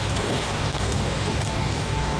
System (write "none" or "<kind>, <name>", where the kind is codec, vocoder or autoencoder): codec, DAC